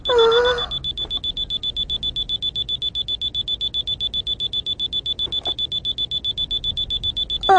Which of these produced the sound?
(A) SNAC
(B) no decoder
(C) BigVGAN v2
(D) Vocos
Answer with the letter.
B